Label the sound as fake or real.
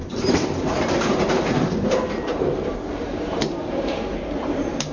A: fake